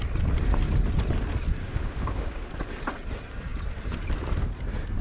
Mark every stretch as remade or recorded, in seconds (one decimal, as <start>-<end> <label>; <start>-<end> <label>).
0.0-1.6 recorded; 1.6-2.5 remade; 2.5-5.0 recorded